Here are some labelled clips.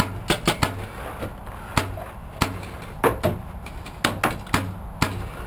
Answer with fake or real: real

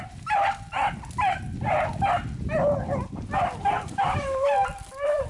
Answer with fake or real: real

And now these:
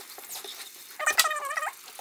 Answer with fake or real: real